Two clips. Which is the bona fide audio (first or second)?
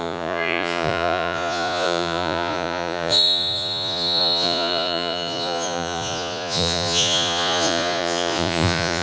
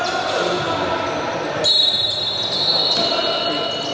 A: second